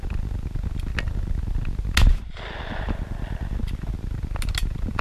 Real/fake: real